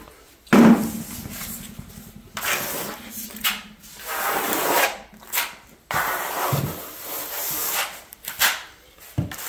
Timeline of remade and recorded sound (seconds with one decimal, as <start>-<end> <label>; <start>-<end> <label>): 0.0-3.4 recorded; 3.4-5.2 remade; 5.2-9.5 recorded